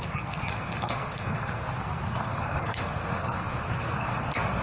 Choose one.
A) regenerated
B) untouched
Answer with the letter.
A